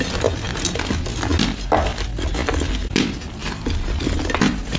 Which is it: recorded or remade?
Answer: recorded